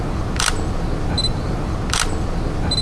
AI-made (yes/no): no